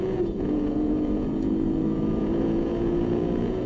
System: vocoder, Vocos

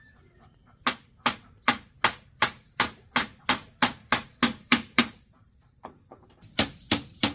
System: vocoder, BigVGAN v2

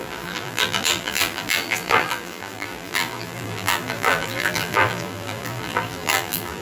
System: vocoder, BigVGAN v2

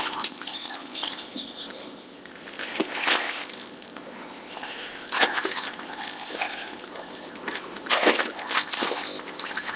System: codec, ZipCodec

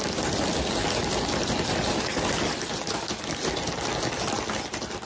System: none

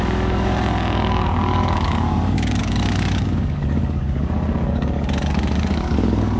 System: codec, DAC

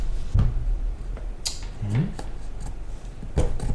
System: none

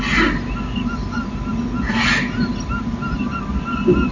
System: none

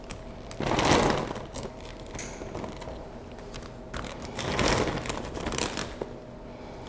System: none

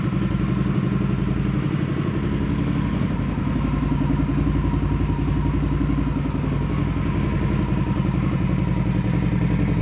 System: none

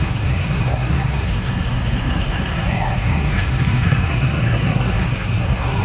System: codec, SNAC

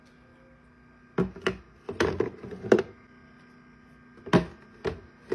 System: none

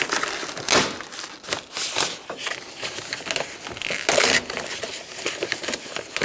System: none